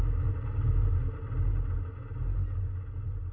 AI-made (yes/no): no